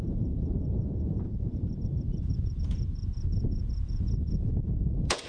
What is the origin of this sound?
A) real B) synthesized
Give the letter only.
B